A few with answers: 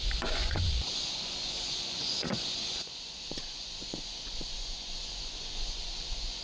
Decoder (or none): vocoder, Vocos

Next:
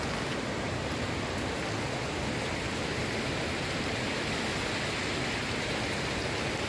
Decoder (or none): none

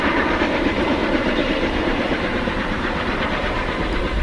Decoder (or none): vocoder, BigVGAN v2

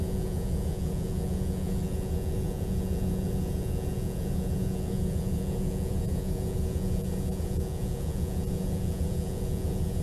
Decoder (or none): vocoder, Vocos